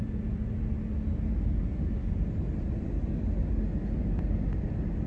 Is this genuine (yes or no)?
yes